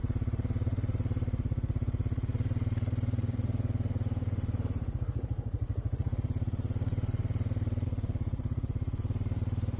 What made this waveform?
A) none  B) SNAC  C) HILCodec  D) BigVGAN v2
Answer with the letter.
D